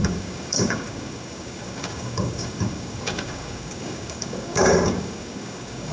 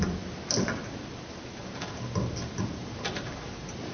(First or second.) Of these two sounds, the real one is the second